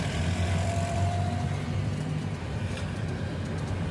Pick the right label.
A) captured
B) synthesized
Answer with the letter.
B